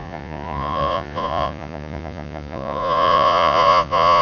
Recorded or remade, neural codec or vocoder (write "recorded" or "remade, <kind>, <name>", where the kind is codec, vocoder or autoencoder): remade, vocoder, Vocos